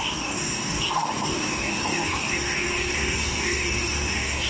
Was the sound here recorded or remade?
remade